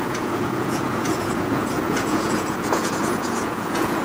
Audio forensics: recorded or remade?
remade